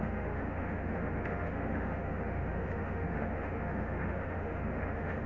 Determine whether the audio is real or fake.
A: fake